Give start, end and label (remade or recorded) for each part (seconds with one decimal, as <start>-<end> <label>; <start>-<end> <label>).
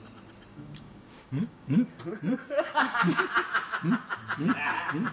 0.0-0.5 recorded; 0.5-2.0 remade; 2.0-2.4 recorded; 2.4-3.2 remade; 3.2-5.1 recorded